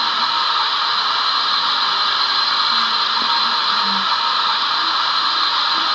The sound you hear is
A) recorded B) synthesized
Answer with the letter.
A